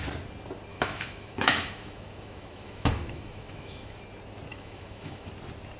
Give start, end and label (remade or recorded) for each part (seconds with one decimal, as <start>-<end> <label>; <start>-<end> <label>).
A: 0.0-0.7 recorded; 0.7-4.0 remade; 4.0-4.5 recorded; 4.5-5.3 remade; 5.3-5.8 recorded